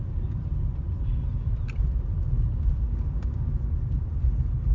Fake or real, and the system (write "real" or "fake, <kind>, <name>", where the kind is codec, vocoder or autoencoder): fake, vocoder, BigVGAN v2